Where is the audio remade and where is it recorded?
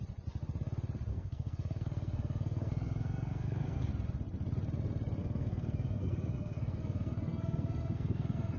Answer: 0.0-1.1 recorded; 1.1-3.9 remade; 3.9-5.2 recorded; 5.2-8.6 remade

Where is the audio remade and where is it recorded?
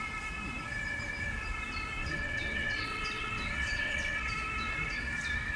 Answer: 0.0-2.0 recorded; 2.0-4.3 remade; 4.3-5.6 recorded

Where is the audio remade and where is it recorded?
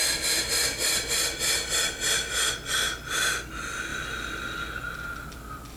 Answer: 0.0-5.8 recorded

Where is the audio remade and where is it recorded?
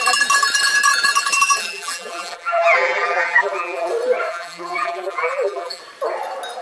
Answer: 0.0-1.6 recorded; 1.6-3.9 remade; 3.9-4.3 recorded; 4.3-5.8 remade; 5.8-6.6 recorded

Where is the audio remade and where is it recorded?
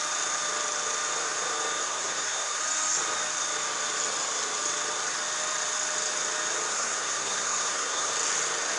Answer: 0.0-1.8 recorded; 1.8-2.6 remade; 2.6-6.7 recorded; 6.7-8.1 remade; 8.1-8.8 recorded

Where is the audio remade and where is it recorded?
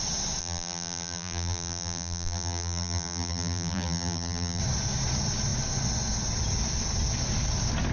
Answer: 0.0-0.4 recorded; 0.4-4.6 remade; 4.6-7.9 recorded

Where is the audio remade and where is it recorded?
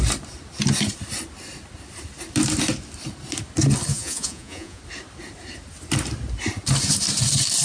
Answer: 0.0-3.9 recorded; 3.9-4.8 remade; 4.8-7.6 recorded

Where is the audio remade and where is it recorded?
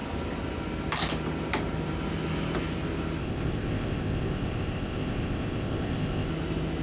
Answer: 0.0-3.2 recorded; 3.2-6.3 remade; 6.3-6.8 recorded